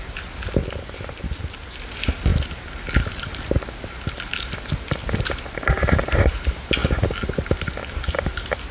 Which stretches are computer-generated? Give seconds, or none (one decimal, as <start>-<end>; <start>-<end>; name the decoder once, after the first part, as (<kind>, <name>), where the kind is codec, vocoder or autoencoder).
none

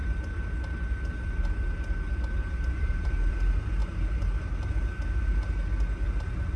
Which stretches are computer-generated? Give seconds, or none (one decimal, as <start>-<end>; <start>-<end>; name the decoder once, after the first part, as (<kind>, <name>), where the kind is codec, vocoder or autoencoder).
none

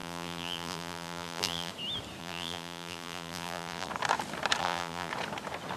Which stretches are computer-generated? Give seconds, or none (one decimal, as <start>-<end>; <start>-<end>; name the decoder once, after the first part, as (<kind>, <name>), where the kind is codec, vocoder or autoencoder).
0.0-1.7 (vocoder, BigVGAN v2); 2.2-3.9; 4.6-5.1

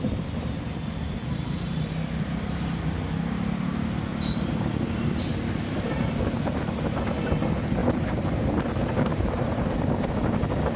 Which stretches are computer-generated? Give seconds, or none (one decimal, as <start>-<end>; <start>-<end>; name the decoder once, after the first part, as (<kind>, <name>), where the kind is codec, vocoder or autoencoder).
1.2-1.9 (vocoder, BigVGAN v2); 7.8-9.8

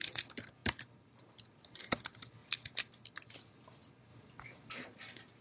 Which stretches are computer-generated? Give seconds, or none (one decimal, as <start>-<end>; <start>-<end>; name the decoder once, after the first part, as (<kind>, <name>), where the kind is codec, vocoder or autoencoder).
0.6-1.2 (vocoder, BigVGAN v2); 4.1-4.7

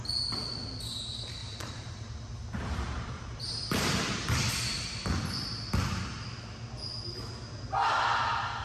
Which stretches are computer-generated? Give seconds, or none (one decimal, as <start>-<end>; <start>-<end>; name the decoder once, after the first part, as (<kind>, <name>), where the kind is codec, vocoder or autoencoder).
1.4-4.4 (vocoder, BigVGAN v2)